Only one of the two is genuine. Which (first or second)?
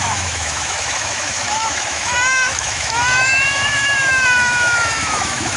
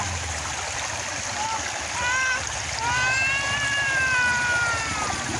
second